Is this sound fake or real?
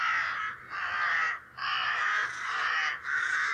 real